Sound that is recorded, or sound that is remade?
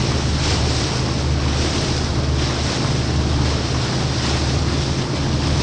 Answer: recorded